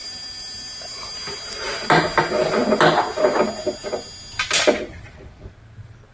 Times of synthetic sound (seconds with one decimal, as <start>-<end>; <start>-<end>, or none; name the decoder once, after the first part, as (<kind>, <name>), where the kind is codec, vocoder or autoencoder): none